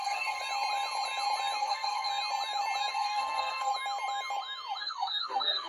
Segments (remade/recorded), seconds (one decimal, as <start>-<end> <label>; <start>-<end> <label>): 0.0-0.4 remade; 0.4-1.6 recorded; 1.6-2.1 remade; 2.1-2.9 recorded; 2.9-3.7 remade; 3.7-4.8 recorded; 4.8-5.7 remade